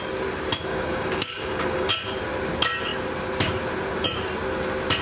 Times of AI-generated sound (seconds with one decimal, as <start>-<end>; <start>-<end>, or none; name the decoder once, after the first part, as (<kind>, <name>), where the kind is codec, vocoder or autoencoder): 0.7-1.9 (codec, DAC)